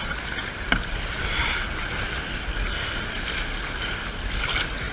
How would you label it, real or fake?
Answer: real